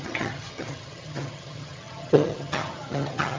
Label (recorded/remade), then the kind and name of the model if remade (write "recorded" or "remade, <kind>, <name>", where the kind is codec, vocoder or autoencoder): remade, vocoder, HiFi-GAN